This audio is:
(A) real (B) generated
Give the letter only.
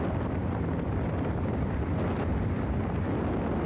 A